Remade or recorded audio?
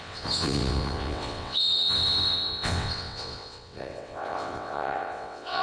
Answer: remade